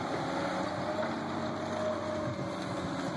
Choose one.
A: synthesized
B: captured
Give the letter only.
B